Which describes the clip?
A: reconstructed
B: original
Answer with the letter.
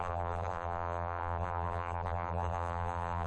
A